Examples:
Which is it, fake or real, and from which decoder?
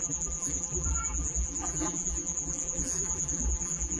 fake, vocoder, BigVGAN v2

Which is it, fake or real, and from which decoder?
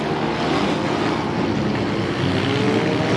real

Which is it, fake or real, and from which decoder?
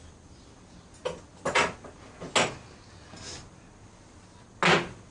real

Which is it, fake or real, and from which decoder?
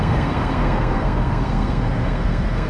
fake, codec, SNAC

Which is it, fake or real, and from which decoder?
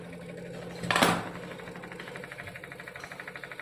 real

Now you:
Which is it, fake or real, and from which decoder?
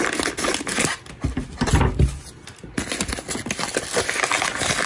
real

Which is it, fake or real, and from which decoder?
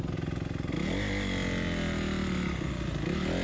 real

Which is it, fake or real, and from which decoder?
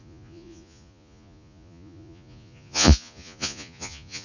fake, vocoder, Vocos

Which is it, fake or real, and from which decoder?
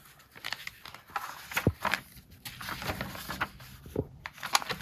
real